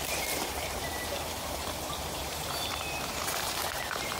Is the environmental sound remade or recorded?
remade